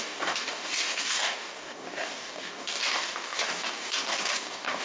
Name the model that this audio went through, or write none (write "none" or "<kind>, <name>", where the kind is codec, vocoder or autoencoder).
codec, DAC